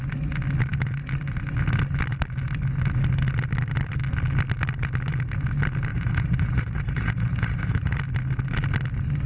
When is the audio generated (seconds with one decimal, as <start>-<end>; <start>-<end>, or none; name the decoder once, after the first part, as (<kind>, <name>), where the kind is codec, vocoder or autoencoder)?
5.9-8.0 (vocoder, Vocos)